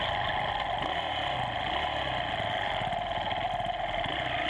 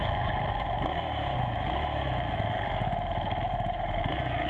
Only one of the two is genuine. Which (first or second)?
first